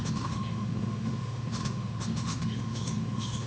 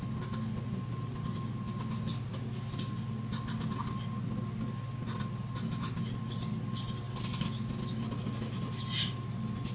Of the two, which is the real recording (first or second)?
second